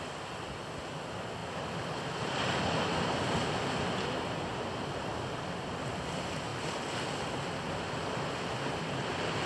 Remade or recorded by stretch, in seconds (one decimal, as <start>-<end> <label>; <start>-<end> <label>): 0.0-9.5 recorded

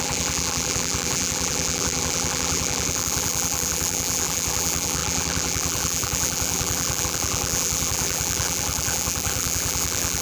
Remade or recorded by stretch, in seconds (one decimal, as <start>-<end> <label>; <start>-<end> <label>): 0.0-10.2 remade

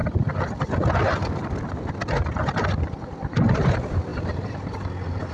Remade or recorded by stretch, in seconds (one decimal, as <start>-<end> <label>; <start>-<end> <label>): 0.0-3.2 recorded; 3.2-5.3 remade

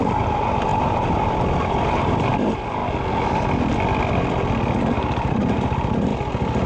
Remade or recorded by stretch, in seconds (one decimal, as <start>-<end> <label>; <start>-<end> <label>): 0.0-2.8 remade; 2.8-4.8 recorded; 4.8-6.1 remade; 6.1-6.7 recorded

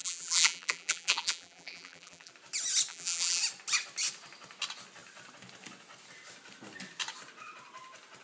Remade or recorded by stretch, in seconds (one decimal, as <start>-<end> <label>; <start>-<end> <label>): 0.0-2.3 remade; 2.3-2.9 recorded; 2.9-3.4 remade; 3.4-8.2 recorded

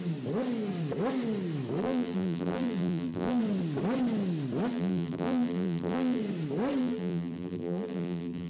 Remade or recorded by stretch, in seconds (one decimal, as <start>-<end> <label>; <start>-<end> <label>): 0.0-1.8 recorded; 1.8-3.4 remade; 3.4-4.7 recorded; 4.7-6.2 remade; 6.2-6.8 recorded; 6.8-8.5 remade

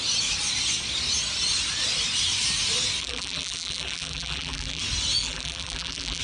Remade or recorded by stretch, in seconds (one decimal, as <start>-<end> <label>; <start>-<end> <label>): 0.0-3.0 recorded; 3.0-4.8 remade; 4.8-5.2 recorded; 5.2-6.2 remade